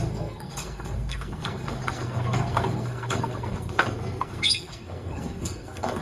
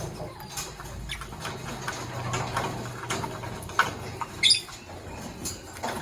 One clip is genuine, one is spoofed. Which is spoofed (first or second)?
first